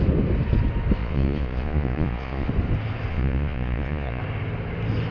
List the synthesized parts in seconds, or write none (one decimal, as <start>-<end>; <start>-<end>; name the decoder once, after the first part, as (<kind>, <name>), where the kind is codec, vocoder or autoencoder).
1.0-2.5 (vocoder, Vocos); 3.1-4.2